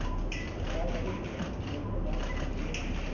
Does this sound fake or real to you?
real